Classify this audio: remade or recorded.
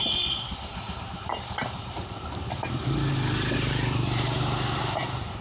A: remade